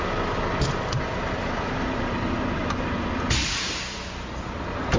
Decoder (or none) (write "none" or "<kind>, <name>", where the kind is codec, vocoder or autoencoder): none